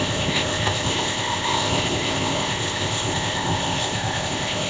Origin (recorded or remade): remade